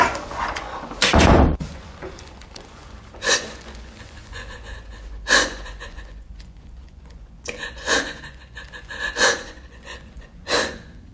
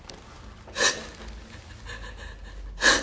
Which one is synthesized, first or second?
first